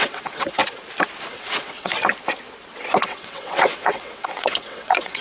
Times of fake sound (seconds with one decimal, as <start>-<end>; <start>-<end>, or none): 0.0-0.6; 1.3-1.9; 2.9-5.2